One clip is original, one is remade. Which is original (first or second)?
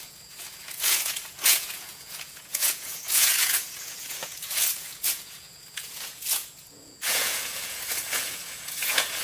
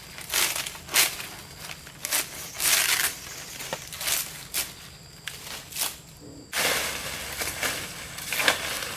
second